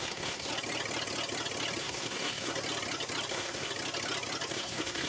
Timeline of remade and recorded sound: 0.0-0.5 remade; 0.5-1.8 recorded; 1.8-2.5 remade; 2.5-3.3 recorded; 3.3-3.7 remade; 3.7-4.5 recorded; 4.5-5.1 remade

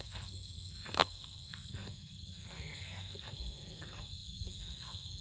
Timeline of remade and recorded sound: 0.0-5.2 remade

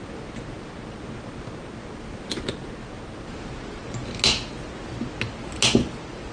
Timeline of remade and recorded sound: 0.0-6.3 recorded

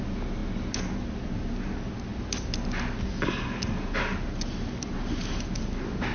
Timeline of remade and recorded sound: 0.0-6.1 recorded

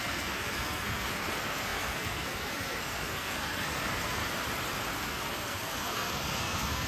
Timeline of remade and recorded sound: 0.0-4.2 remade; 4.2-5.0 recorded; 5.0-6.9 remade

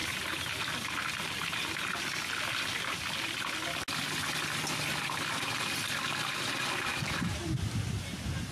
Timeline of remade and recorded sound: 0.0-8.5 recorded